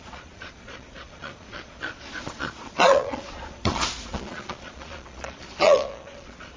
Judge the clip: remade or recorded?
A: remade